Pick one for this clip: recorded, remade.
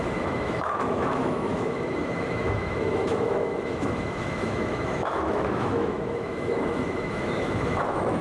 remade